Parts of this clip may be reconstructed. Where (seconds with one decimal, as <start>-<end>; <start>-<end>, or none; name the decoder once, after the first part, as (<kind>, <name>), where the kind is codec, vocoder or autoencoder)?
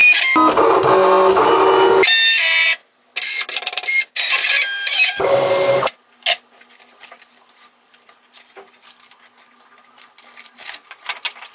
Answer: 4.9-5.5 (codec, DAC)